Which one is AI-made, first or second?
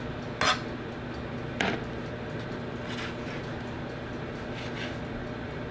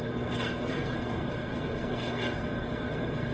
second